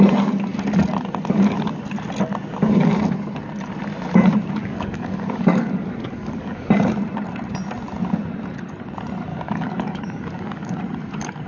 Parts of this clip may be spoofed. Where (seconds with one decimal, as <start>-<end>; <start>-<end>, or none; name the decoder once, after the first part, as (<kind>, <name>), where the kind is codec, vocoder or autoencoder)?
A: 4.6-6.7 (codec, DAC); 9.3-10.8